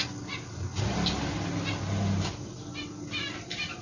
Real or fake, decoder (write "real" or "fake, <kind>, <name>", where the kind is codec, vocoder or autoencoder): real